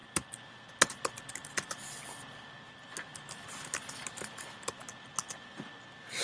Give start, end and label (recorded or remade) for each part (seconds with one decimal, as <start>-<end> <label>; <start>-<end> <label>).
0.0-6.2 recorded